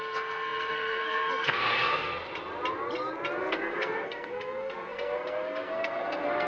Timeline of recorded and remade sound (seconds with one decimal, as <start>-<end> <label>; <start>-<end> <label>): 0.0-2.1 remade; 2.1-3.4 recorded; 3.4-6.5 remade